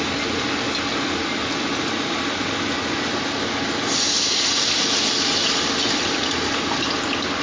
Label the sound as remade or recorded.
recorded